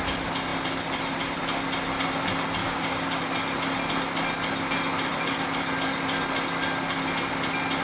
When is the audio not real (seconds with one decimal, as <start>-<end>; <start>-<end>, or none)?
2.6-3.2